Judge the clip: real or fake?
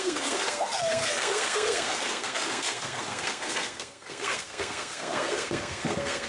fake